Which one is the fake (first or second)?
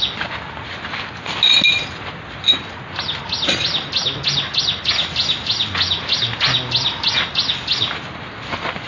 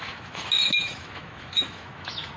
second